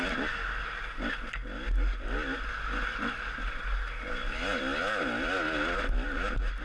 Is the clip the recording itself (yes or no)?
yes